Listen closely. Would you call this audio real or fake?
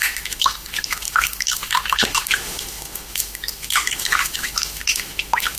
fake